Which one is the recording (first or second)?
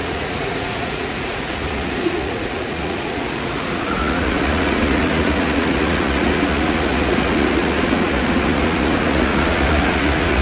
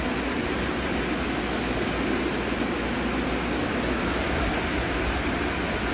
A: second